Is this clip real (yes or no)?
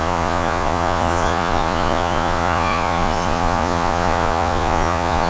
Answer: no